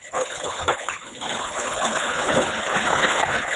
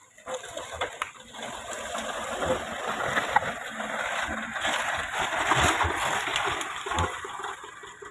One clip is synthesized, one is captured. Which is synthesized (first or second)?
first